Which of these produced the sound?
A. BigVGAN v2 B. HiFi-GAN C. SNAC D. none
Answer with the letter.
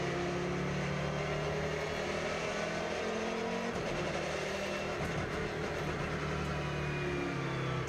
D